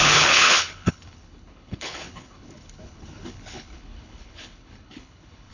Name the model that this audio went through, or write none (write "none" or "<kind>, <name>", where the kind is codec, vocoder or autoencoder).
codec, HILCodec